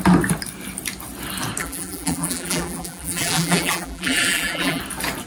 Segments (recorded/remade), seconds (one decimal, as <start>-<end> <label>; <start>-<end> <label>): 0.0-1.6 recorded; 1.6-4.8 remade; 4.8-5.3 recorded